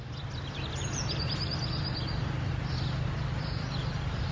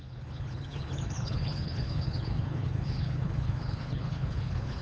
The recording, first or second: first